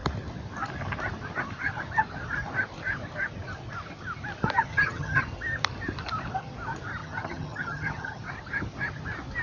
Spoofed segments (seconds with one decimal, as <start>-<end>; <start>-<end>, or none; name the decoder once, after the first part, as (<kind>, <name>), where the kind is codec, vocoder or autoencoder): 4.7-5.2 (vocoder, HiFi-GAN); 7.0-8.2